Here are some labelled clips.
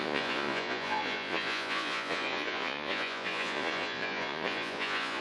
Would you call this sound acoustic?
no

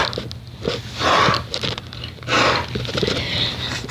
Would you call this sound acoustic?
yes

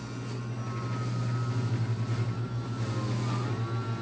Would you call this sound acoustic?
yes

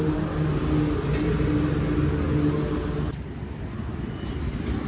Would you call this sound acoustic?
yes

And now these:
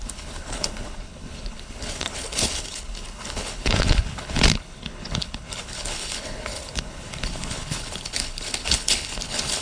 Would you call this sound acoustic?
no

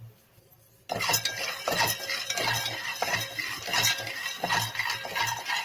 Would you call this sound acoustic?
yes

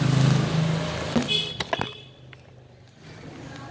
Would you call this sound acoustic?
yes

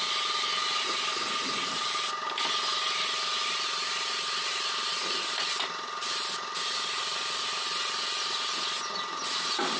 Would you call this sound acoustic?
yes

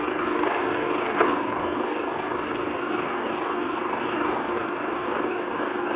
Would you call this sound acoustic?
no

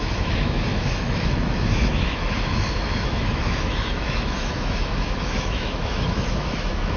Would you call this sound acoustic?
no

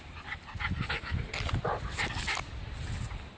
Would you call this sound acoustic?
yes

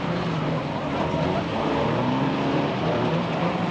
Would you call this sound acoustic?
no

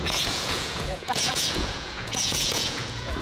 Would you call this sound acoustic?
no